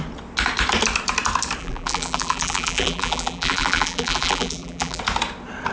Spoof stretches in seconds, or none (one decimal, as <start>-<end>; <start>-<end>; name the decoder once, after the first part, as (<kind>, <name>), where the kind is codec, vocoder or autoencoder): 1.6-5.0 (vocoder, BigVGAN v2)